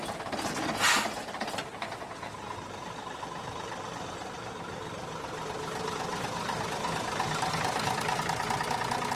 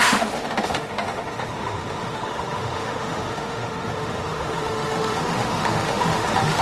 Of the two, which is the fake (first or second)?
second